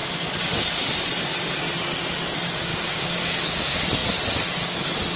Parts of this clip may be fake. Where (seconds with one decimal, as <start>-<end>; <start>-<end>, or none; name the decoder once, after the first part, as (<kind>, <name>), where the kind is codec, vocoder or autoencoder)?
2.7-3.4 (codec, DAC)